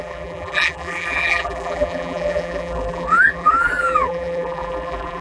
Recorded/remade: remade